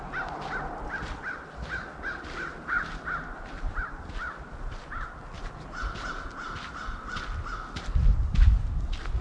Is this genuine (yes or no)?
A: yes